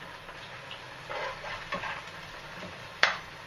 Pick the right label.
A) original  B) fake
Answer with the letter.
B